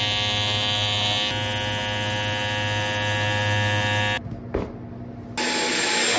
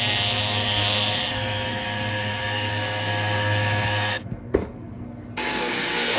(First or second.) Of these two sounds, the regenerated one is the second